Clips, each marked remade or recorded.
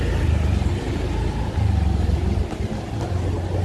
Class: recorded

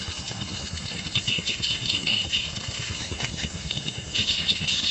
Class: remade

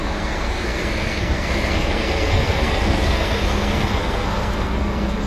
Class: remade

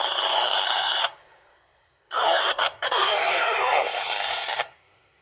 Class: remade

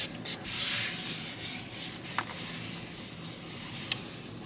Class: recorded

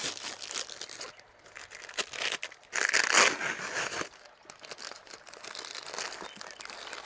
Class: recorded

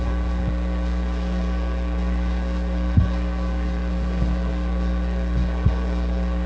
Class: remade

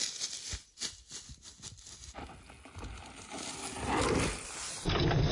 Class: recorded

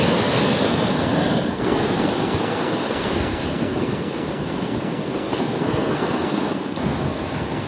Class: remade